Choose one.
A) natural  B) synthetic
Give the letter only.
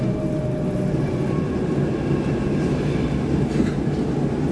A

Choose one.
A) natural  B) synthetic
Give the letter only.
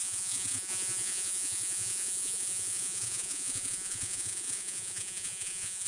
B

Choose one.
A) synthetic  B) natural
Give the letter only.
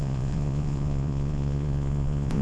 A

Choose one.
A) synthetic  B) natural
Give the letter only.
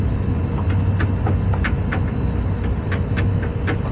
B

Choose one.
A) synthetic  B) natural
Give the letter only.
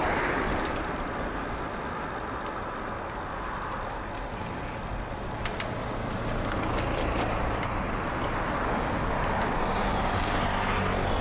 B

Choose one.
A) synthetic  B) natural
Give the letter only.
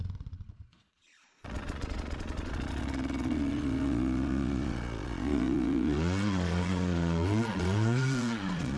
A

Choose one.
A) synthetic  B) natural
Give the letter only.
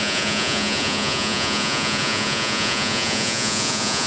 A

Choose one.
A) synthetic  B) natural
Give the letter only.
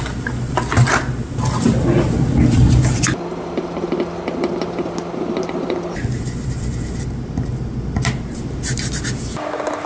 B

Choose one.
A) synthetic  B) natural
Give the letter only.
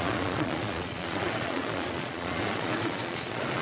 A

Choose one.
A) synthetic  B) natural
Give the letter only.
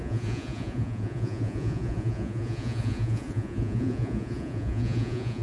A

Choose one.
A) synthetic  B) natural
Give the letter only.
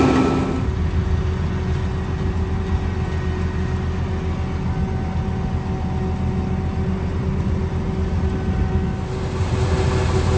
B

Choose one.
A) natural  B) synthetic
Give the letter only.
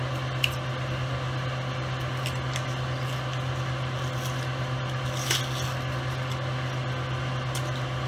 A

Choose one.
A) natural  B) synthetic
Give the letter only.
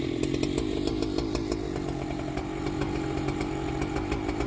A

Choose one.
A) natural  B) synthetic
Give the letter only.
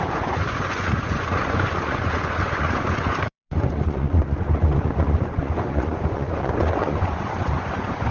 B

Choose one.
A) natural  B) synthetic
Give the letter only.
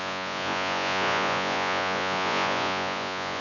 B